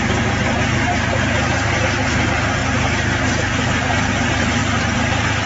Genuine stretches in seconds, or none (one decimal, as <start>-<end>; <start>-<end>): 0.0-2.6; 3.2-5.5